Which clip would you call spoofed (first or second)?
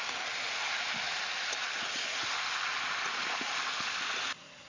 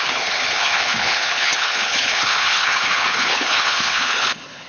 second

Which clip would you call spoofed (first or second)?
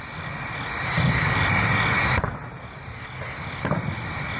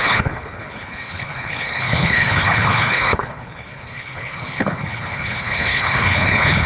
second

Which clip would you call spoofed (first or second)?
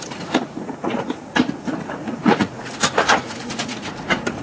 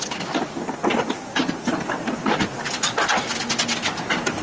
first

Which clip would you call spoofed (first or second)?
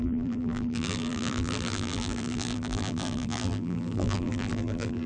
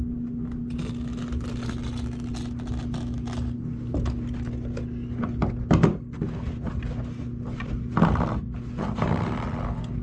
first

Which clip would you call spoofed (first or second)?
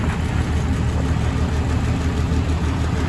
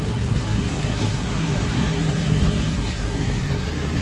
second